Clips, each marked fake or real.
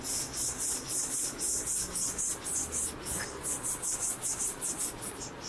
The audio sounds real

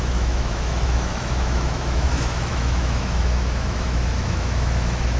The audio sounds fake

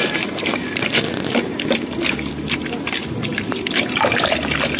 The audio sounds fake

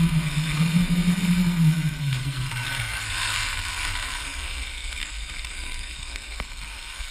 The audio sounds fake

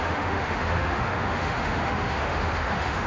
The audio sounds fake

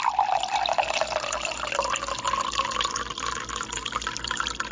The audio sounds real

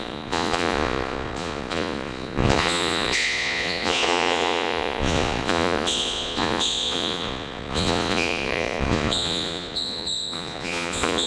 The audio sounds fake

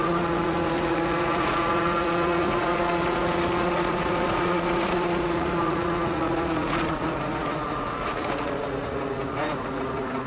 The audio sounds fake